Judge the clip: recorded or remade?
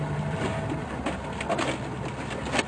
recorded